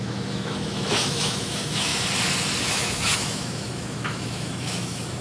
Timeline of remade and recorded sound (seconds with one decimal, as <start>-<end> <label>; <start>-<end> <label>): 0.0-1.9 remade; 1.9-2.6 recorded; 2.6-5.2 remade